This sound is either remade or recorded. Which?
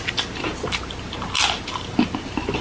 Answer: recorded